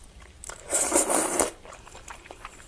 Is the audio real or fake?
fake